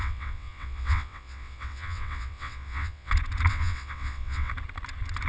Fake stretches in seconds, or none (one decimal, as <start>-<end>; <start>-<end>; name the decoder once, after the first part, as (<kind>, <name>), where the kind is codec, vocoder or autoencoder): 0.0-3.1 (vocoder, WaveNeXt); 3.5-4.5